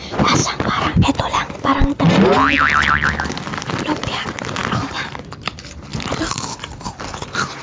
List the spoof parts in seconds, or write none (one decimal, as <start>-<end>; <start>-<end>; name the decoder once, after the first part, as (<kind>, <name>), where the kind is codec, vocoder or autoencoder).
4.6-5.4 (vocoder, BigVGAN v2)